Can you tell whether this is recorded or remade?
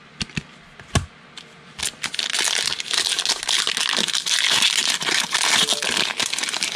recorded